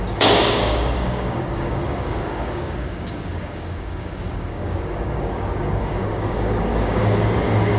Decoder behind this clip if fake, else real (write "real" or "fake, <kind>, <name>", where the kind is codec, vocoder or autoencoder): fake, codec, DAC